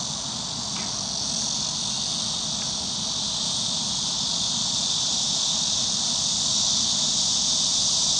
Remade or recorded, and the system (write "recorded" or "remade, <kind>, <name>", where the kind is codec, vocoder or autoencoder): recorded